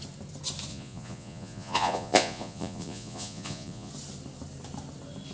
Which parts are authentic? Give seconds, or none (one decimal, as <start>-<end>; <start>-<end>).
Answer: 0.0-0.7; 3.9-5.3